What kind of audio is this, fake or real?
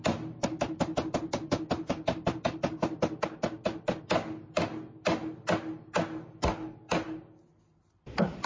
real